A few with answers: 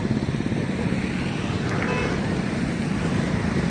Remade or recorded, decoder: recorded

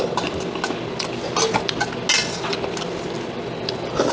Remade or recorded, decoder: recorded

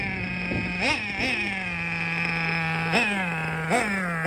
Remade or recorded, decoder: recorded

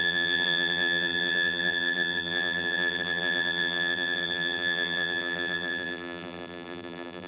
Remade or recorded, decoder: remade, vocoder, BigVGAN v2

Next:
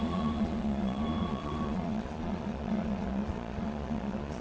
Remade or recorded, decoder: remade, vocoder, Vocos